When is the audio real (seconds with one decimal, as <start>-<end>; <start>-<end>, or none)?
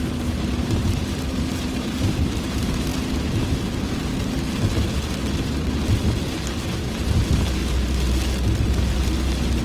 2.9-6.6; 7.6-9.6